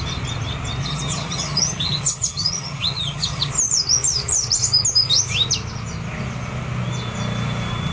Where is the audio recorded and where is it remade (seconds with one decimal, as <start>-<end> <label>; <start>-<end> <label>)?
0.0-0.8 recorded; 0.8-3.5 remade; 3.5-7.9 recorded